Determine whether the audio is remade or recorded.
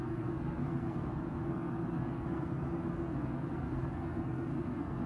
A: remade